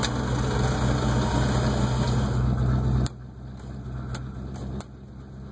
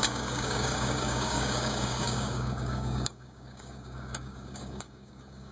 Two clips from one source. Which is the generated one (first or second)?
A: second